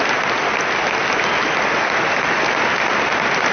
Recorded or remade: recorded